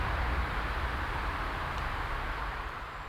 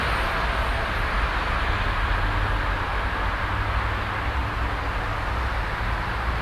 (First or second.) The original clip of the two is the second